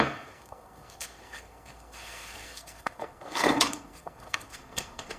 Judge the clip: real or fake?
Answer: fake